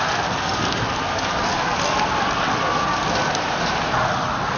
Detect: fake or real real